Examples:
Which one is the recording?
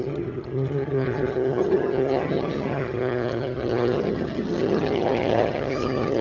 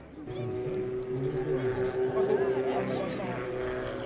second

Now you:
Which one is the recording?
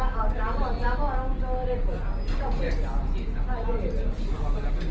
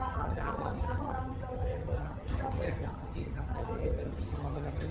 first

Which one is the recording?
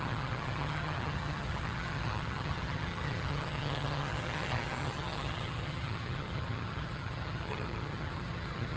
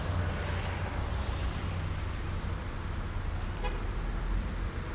second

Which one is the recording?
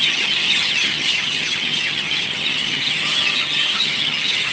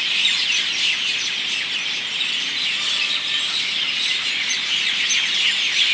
second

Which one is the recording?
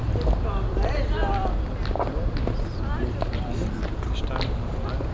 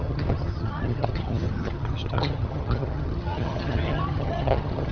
first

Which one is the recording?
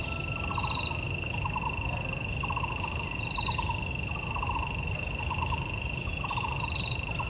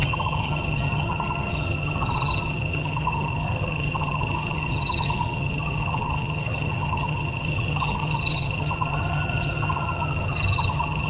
first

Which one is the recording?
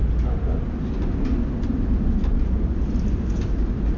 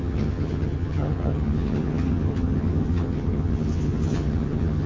first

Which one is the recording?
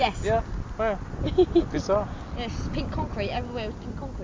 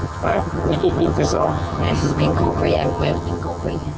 first